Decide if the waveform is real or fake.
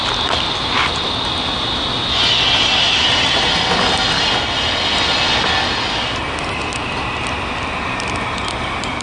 real